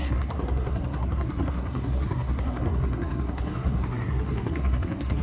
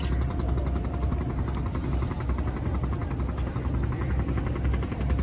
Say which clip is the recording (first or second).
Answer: second